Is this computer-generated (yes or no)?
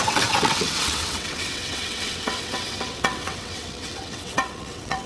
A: yes